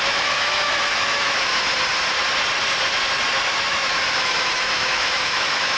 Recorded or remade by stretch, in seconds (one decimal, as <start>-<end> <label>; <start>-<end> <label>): 0.0-1.5 remade; 1.5-3.5 recorded; 3.5-5.8 remade